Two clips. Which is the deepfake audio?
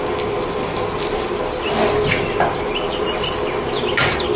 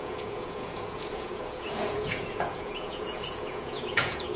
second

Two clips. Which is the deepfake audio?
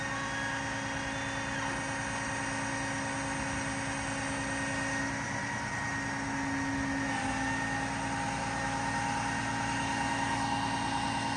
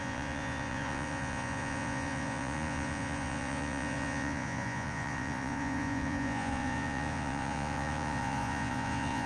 second